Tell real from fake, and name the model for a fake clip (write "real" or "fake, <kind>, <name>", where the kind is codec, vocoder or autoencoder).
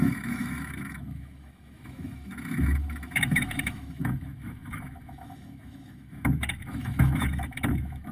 fake, autoencoder, DAC-VAE